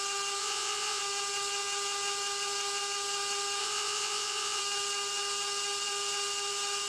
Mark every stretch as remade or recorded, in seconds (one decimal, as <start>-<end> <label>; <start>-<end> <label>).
0.0-0.4 recorded; 0.4-1.0 remade; 1.0-3.6 recorded; 3.6-4.6 remade; 4.6-6.9 recorded